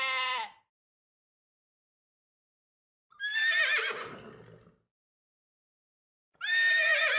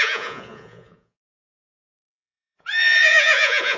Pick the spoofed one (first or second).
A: second